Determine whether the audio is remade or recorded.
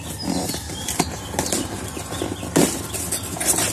recorded